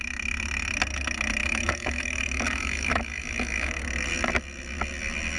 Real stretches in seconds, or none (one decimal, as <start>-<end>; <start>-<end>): 0.0-1.4; 3.8-5.4